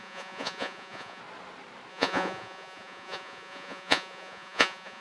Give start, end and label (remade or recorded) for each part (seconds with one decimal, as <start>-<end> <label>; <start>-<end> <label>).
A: 0.0-1.2 remade; 1.2-1.9 recorded; 1.9-5.0 remade